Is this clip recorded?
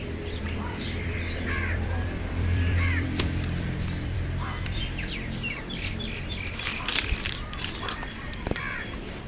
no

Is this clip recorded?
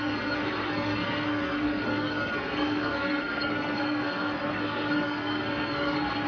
no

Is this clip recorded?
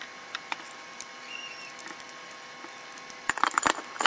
no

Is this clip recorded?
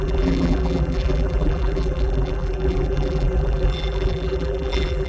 no